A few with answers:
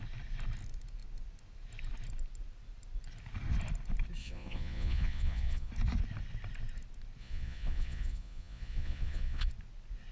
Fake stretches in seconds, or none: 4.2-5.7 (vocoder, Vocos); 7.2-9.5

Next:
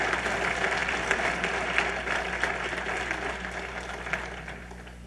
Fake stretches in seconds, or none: none

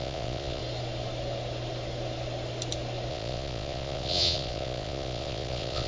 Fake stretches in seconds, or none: 0.0-0.6 (vocoder, Vocos); 3.1-5.9

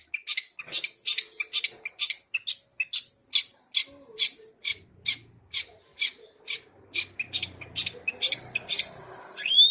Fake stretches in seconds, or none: none

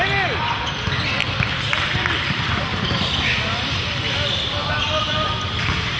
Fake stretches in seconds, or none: 1.2-4.8 (vocoder, BigVGAN v2)